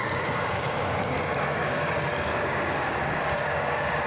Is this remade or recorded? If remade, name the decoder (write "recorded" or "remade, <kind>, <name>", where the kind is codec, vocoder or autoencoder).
remade, codec, DAC